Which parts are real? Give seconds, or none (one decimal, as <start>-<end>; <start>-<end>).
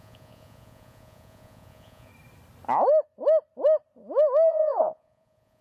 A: 2.1-4.5